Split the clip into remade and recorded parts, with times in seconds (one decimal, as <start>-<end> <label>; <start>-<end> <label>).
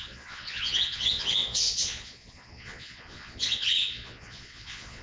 0.0-5.0 remade